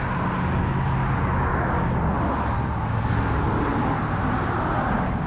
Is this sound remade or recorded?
recorded